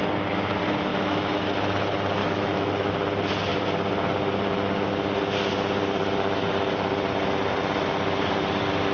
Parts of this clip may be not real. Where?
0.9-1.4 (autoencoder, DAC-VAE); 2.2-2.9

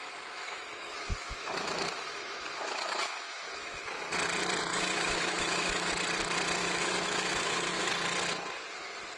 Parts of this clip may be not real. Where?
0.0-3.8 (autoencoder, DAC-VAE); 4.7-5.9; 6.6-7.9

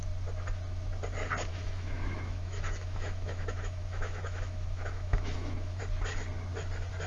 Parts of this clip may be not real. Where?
1.5-5.8 (autoencoder, DAC-VAE)

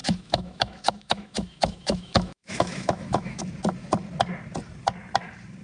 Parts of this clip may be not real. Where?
0.0-3.4 (autoencoder, DAC-VAE)